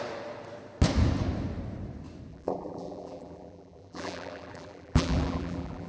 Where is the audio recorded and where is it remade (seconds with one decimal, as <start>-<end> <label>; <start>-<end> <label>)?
0.0-2.3 recorded; 2.3-5.9 remade